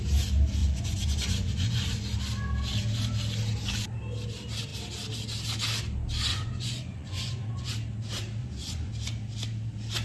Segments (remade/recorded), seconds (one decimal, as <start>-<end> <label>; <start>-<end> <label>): 0.0-0.6 recorded; 0.6-2.0 remade; 2.0-6.3 recorded; 6.3-7.7 remade; 7.7-8.4 recorded; 8.4-8.9 remade; 8.9-10.0 recorded